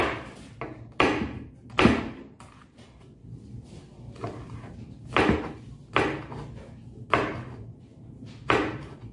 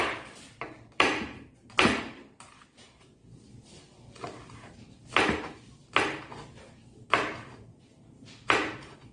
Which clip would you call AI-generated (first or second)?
second